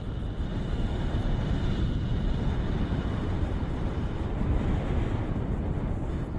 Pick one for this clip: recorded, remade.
remade